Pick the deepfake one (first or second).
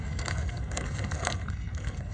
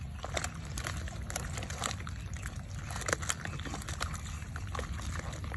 first